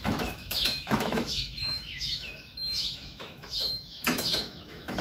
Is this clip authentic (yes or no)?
no